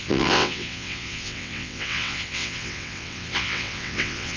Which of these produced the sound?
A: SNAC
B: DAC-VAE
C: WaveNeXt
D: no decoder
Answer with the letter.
C